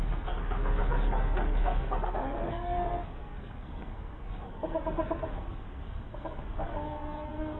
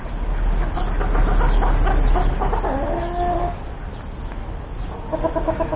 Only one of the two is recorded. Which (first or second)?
second